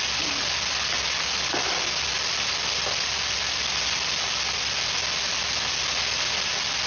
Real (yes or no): yes